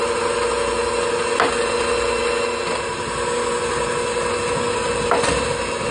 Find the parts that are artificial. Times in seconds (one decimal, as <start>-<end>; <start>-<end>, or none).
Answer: none